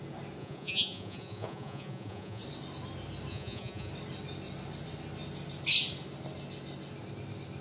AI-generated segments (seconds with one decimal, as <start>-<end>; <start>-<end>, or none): 0.4-2.4; 3.3-3.9